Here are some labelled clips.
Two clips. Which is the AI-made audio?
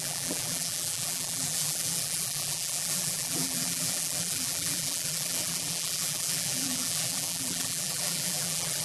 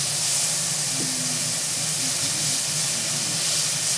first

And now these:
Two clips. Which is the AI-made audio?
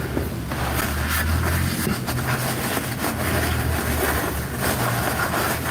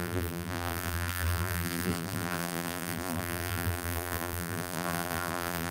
second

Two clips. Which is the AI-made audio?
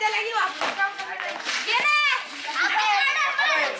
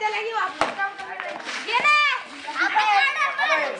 first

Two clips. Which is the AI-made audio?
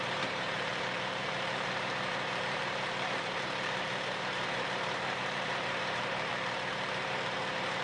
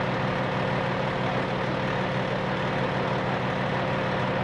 first